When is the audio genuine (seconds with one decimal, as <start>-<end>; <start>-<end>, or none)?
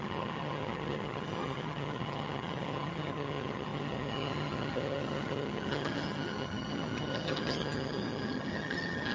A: none